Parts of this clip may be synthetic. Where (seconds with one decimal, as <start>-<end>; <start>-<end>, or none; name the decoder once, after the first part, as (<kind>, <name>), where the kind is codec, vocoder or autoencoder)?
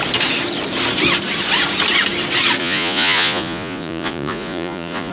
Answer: 2.6-5.1 (vocoder, Vocos)